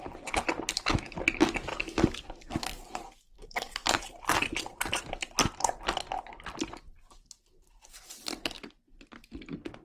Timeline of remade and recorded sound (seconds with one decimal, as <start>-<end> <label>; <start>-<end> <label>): 0.0-1.7 recorded; 1.7-4.0 remade; 4.0-9.8 recorded